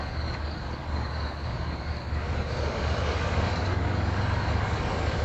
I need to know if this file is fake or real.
fake